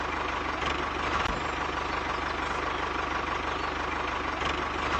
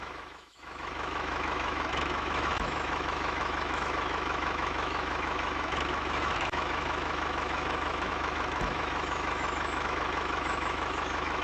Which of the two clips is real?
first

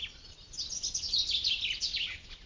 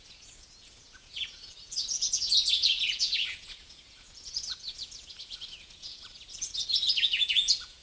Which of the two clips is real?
first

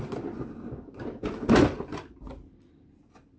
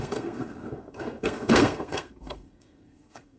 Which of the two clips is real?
first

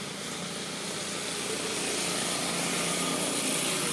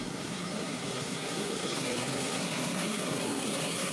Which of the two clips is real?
first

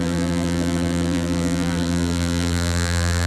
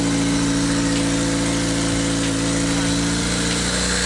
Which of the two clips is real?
second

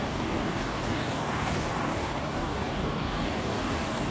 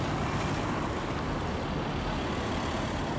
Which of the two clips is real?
second